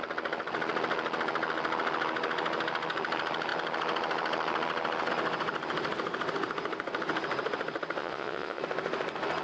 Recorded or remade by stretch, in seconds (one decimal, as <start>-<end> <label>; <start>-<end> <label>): 0.0-8.0 recorded; 8.0-8.6 remade; 8.6-9.4 recorded